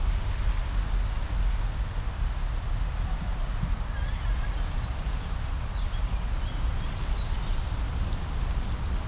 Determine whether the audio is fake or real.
real